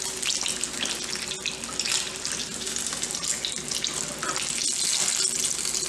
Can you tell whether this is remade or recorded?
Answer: recorded